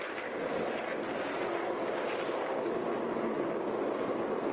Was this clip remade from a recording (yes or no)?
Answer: no